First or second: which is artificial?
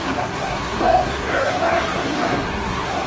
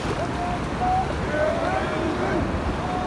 first